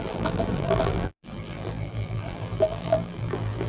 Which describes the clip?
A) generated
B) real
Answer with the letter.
A